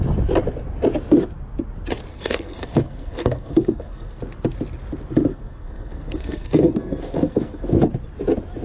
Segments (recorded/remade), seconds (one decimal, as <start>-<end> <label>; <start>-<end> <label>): 0.0-2.1 recorded; 2.1-4.2 remade; 4.2-5.3 recorded; 5.3-7.9 remade; 7.9-8.6 recorded